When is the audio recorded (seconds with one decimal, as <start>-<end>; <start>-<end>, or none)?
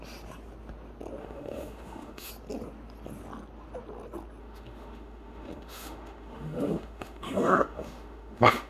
0.0-1.2; 2.3-4.4